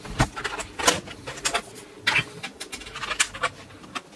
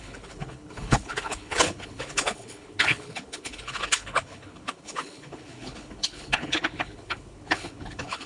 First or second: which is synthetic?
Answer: second